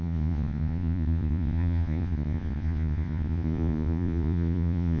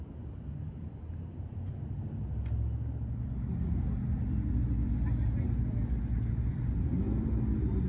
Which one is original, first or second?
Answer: second